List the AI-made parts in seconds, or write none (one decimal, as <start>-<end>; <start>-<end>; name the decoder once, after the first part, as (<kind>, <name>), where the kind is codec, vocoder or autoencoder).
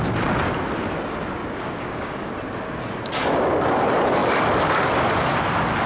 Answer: 1.4-2.3 (codec, DAC)